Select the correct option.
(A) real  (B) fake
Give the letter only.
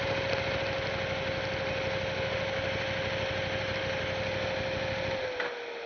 A